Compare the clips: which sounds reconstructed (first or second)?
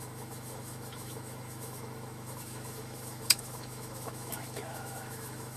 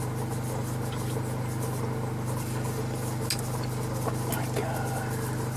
first